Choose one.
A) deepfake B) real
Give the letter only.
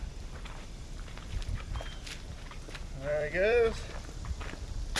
A